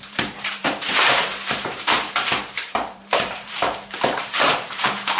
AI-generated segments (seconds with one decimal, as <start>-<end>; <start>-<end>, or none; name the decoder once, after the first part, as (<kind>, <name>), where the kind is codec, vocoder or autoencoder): 0.0-5.2 (vocoder, BigVGAN v2)

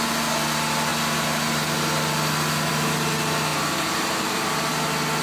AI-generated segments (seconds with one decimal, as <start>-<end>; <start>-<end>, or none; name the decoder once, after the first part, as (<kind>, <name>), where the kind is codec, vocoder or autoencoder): 3.5-4.7 (vocoder, BigVGAN v2)

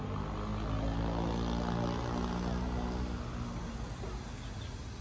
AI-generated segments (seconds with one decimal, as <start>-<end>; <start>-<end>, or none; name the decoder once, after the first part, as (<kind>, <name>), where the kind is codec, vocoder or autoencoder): none

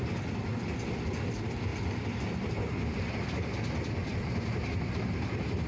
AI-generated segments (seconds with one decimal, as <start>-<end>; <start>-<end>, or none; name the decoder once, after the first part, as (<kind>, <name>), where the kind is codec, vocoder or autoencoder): 1.7-2.5 (vocoder, BigVGAN v2)

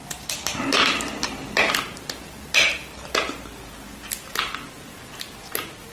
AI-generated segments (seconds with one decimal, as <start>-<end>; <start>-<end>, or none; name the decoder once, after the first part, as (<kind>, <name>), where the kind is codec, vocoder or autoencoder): 1.2-1.7 (vocoder, BigVGAN v2)

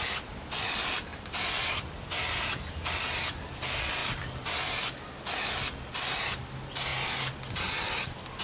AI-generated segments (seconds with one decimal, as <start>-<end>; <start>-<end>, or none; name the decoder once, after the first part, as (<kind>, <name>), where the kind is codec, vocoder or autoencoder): 1.1-2.2 (vocoder, BigVGAN v2); 4.0-5.2; 6.9-8.4

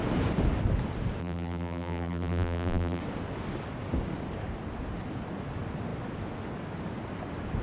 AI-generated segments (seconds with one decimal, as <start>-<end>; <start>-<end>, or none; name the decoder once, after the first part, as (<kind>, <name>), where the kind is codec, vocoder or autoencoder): 1.2-3.0 (vocoder, BigVGAN v2)

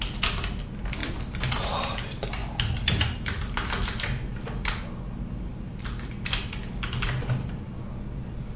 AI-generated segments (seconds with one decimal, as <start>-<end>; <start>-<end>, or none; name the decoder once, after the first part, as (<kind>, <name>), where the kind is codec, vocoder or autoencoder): 1.0-1.6 (vocoder, BigVGAN v2)